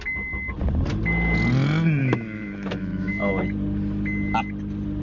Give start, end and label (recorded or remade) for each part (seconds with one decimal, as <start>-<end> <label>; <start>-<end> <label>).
0.0-2.0 recorded; 2.0-3.3 remade; 3.3-5.0 recorded